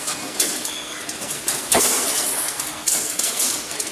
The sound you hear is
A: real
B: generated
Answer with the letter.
B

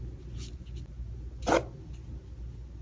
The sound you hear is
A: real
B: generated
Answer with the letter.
A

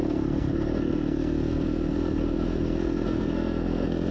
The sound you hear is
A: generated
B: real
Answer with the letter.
A